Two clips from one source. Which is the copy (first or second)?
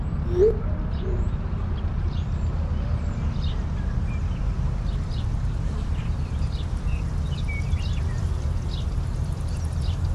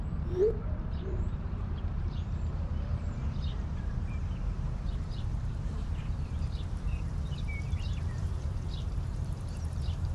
second